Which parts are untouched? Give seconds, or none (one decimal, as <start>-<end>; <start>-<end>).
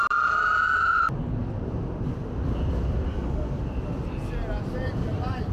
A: 0.0-3.1; 3.6-5.5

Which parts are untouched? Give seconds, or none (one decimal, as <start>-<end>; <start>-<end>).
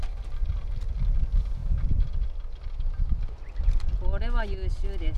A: 0.0-5.2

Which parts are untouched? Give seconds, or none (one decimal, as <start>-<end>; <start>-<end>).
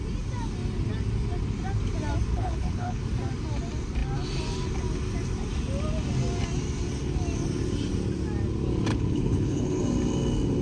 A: 0.0-2.3; 3.0-8.9; 9.8-10.6